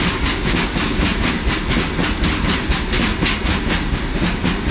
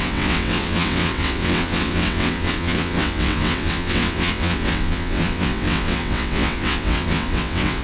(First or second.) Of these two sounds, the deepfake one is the second